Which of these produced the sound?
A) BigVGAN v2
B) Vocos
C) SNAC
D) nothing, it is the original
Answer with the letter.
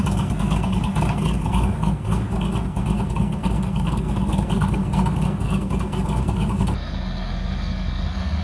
C